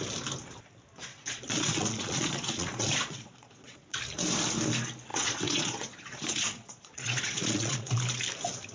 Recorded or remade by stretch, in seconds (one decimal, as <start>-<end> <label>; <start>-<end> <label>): 0.0-1.1 recorded; 1.1-4.0 remade; 4.0-5.1 recorded; 5.1-7.9 remade; 7.9-8.7 recorded